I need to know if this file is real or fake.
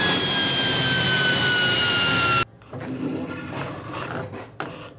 real